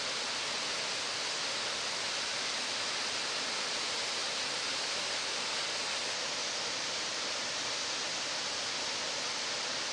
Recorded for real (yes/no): yes